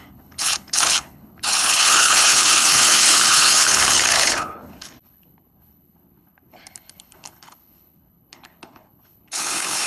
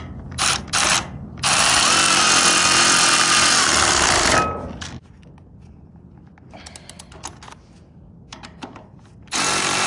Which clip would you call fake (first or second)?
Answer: first